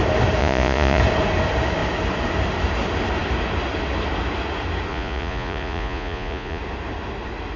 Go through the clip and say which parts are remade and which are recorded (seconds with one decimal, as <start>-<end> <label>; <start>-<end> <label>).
0.0-0.4 recorded; 0.4-1.0 remade; 1.0-4.9 recorded; 4.9-6.6 remade; 6.6-7.6 recorded